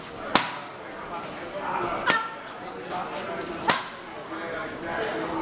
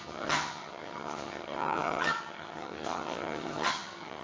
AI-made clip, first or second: second